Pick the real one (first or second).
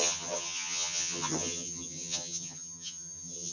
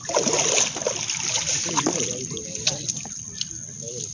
second